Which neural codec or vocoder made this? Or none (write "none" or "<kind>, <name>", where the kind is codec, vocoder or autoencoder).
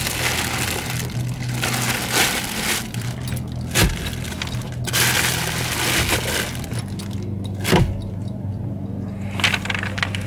none